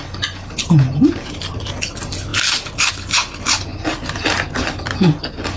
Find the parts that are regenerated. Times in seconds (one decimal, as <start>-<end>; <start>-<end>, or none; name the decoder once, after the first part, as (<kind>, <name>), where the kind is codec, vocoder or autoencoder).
none